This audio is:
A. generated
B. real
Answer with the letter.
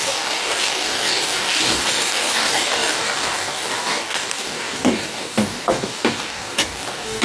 A